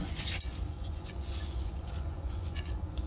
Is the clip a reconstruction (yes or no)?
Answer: yes